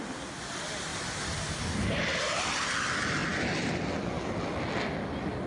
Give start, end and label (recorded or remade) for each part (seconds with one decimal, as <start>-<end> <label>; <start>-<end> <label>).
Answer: 0.0-5.5 recorded